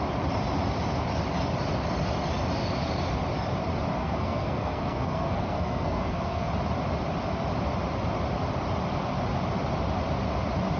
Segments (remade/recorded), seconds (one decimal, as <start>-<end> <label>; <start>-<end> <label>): 0.0-4.0 recorded; 4.0-6.5 remade; 6.5-10.8 recorded